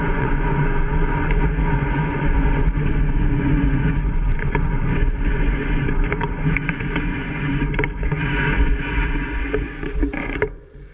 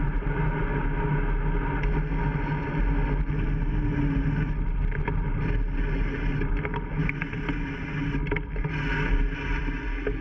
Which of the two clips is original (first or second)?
second